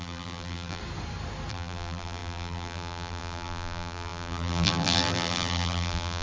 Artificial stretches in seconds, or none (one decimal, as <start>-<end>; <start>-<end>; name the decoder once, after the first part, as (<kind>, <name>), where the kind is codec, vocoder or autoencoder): 0.0-0.8 (vocoder, BigVGAN v2); 1.5-6.2

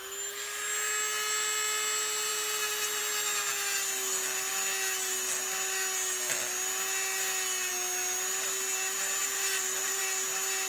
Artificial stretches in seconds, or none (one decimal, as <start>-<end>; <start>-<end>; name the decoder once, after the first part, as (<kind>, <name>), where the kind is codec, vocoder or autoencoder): 9.2-10.0 (vocoder, BigVGAN v2)

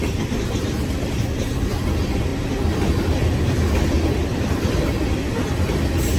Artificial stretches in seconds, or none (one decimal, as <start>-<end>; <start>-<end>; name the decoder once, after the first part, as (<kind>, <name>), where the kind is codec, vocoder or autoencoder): none

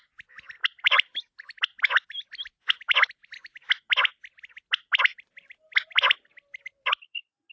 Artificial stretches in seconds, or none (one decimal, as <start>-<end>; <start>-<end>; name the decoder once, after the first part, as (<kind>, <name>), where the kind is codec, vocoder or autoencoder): 0.6-1.4 (vocoder, BigVGAN v2)

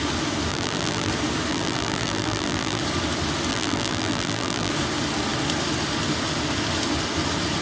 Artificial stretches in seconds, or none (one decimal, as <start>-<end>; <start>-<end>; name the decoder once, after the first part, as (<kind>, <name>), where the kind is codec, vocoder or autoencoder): 0.5-1.1 (vocoder, BigVGAN v2); 1.5-2.8; 3.5-4.7